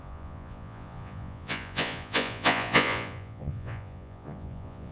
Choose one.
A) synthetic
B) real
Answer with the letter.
A